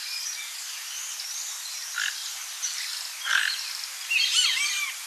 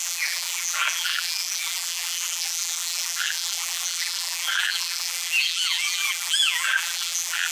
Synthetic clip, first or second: second